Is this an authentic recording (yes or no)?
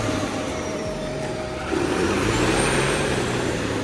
no